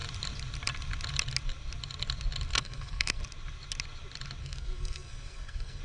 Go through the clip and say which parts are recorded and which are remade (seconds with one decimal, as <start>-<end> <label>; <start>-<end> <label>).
0.0-2.5 recorded; 2.5-3.2 remade; 3.2-4.4 recorded; 4.4-5.8 remade